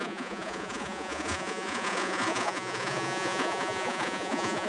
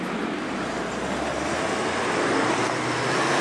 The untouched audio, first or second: second